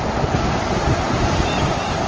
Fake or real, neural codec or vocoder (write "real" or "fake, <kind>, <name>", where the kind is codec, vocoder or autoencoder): real